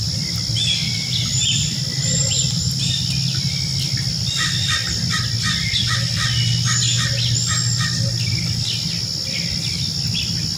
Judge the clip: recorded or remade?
recorded